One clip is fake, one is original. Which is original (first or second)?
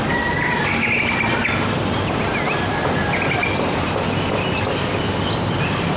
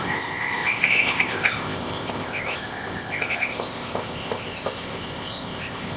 first